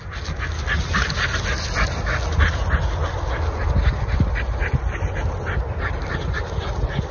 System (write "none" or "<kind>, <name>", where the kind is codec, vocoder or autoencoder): none